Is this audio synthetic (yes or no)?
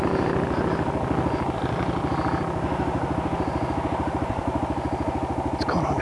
no